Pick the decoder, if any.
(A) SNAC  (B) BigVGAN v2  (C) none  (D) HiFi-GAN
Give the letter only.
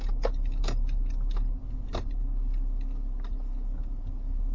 C